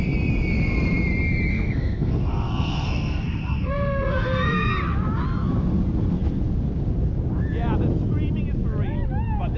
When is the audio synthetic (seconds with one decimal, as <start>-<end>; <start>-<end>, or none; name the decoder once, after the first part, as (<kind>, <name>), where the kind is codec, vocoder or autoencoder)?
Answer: 1.5-4.7 (codec, SNAC)